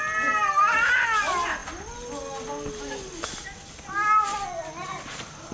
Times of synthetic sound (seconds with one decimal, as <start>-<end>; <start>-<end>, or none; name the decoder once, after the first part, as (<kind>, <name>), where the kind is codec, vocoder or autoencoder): none